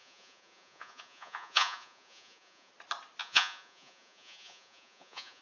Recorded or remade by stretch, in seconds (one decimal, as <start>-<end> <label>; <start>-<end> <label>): 0.0-2.7 remade; 2.7-3.2 recorded; 3.2-5.4 remade